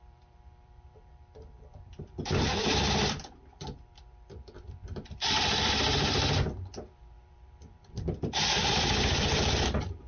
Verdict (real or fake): fake